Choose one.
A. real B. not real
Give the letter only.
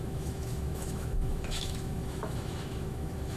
B